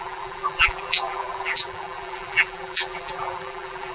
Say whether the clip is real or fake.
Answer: fake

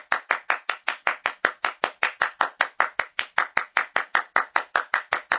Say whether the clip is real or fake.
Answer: real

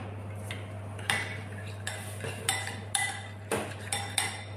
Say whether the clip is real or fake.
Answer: fake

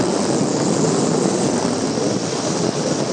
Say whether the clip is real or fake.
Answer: real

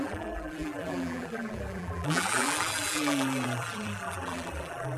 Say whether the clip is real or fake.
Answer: fake